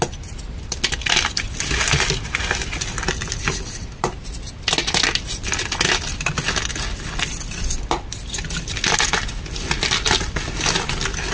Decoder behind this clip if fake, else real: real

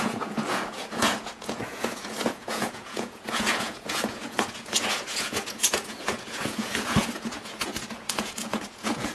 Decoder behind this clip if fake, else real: fake, vocoder, Vocos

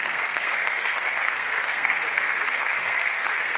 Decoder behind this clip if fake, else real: fake, codec, SNAC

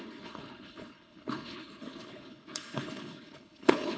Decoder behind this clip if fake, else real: fake, codec, HILCodec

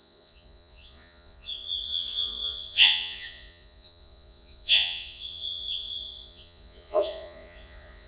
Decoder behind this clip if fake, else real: fake, vocoder, Vocos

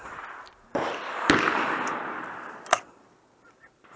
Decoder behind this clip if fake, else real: fake, vocoder, BigVGAN v2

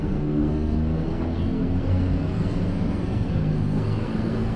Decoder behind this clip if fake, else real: fake, codec, SNAC